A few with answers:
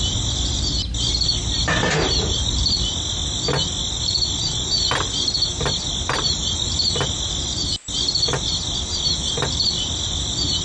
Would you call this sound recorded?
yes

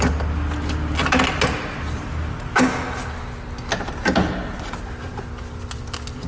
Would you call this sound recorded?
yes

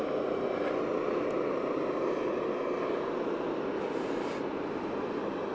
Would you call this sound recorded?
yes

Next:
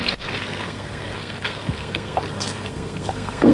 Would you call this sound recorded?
no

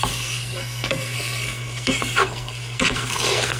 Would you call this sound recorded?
no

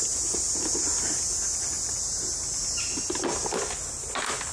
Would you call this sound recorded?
yes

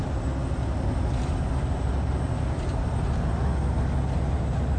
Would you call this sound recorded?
yes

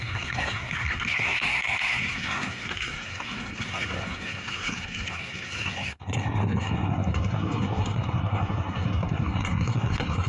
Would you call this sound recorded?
no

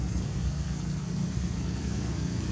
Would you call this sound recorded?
no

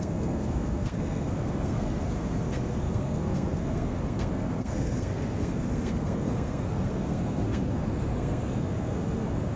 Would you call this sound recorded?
no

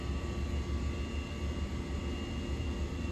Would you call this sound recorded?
yes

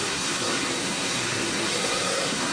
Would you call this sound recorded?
no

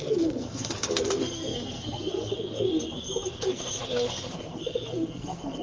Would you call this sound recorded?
no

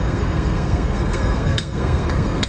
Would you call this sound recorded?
no